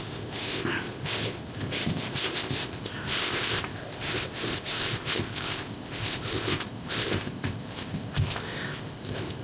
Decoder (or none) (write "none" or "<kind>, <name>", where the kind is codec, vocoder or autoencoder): codec, ZipCodec